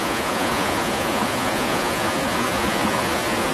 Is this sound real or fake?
fake